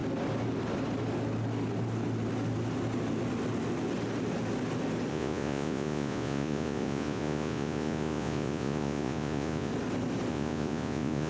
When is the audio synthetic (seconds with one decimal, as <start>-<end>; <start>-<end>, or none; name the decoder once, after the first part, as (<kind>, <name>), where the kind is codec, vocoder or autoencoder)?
5.1-9.7 (vocoder, Vocos); 10.3-11.3